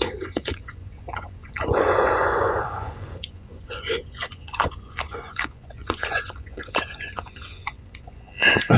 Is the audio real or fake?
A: fake